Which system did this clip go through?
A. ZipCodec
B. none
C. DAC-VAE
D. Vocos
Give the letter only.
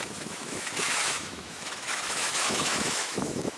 C